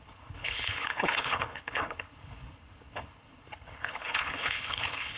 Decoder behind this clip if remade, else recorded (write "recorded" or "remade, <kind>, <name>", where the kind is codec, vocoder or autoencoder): remade, codec, HILCodec